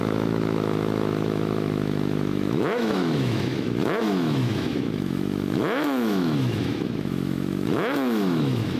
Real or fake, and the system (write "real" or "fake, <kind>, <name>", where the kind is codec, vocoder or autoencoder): fake, autoencoder, DAC-VAE